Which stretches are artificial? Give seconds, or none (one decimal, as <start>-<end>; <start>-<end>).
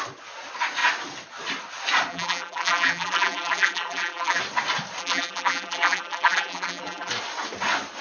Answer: 2.1-4.4; 5.0-7.1